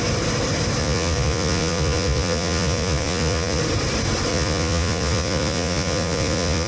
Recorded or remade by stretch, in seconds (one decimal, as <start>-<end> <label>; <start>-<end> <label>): 0.0-0.8 recorded; 0.8-3.6 remade; 3.6-4.3 recorded; 4.3-6.7 remade